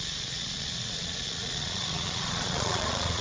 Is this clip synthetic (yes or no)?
yes